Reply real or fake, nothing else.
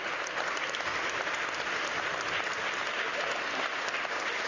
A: real